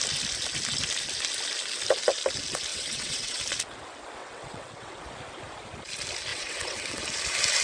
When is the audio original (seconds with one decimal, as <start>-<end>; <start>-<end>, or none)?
0.0-2.7; 3.4-4.2; 5.0-6.3; 7.0-7.6